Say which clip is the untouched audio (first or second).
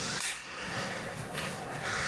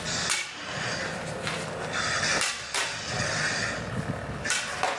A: second